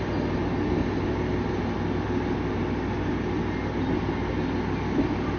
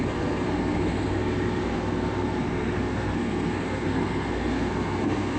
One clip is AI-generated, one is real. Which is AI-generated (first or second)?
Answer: second